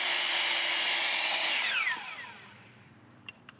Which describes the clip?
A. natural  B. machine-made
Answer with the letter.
B